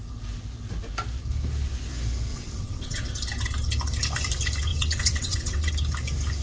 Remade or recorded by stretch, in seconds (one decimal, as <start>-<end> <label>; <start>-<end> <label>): 0.0-2.3 recorded; 2.3-3.1 remade; 3.1-4.7 recorded; 4.7-5.7 remade; 5.7-6.4 recorded